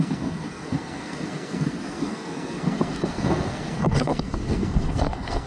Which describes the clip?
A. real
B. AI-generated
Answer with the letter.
B